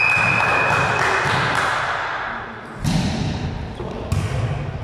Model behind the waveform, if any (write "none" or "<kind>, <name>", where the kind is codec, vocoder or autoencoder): none